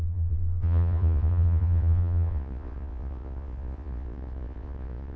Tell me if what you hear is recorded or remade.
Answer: remade